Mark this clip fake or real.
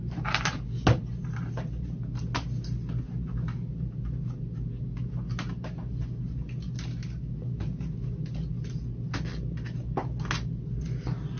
real